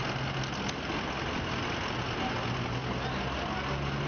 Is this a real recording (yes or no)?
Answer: yes